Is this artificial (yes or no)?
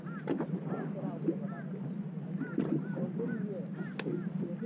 no